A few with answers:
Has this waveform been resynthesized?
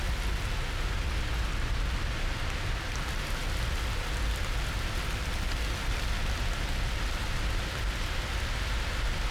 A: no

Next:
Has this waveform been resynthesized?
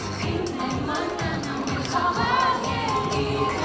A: no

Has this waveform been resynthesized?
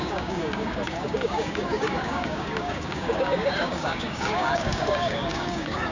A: yes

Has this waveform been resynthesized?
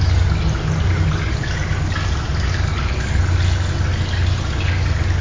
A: no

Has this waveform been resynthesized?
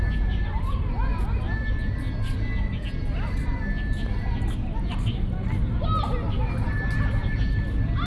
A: no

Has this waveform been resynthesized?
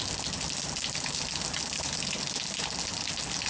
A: no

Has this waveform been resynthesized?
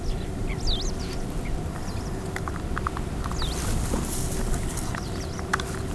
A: no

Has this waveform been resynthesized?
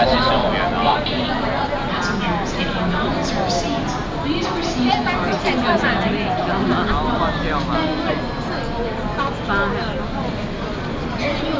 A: no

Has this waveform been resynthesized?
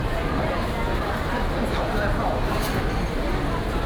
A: no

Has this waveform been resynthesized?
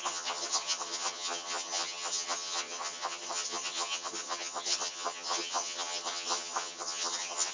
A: yes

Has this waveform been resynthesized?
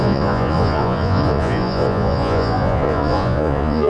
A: yes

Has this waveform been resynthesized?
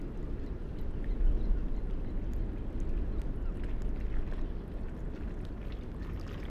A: no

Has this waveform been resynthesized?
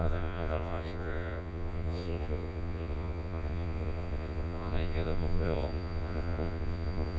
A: yes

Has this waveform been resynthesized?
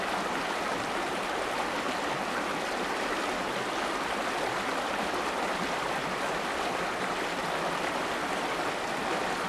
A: no